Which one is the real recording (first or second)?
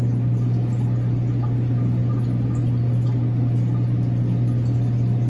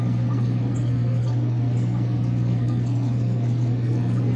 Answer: first